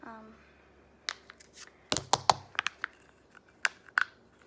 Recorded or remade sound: recorded